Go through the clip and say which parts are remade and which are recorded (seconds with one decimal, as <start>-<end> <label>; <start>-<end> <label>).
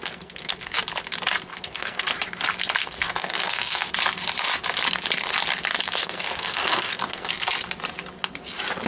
0.0-0.8 remade; 0.8-1.5 recorded; 1.5-2.1 remade; 2.1-2.8 recorded; 2.8-3.9 remade; 3.9-6.0 recorded; 6.0-7.3 remade; 7.3-8.9 recorded